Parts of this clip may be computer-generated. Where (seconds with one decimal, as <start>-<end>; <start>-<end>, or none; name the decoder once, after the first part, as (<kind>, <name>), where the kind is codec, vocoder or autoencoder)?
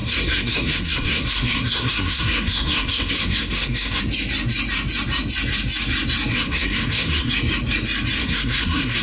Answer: 0.0-4.0 (codec, SNAC); 6.3-7.3; 8.2-9.0